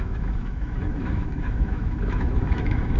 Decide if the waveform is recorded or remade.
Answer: remade